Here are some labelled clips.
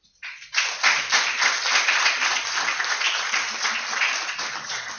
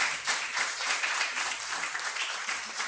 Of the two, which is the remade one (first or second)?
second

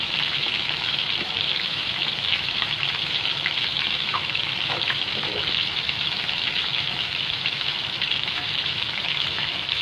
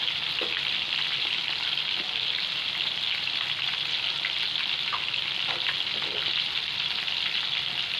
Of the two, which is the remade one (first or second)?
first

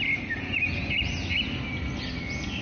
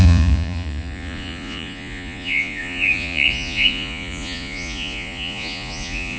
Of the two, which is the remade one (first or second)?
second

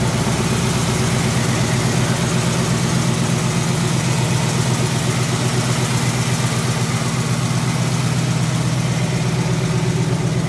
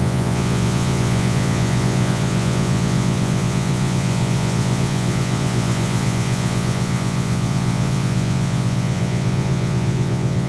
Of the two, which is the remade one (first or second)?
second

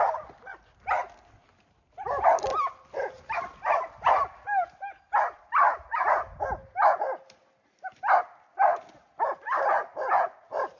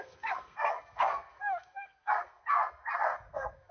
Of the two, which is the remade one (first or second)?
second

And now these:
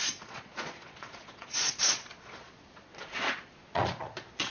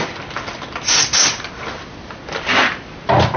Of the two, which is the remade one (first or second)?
first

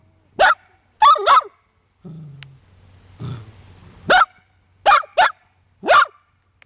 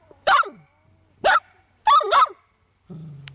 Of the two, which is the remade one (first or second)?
second